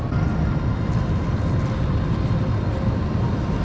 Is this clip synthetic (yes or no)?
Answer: no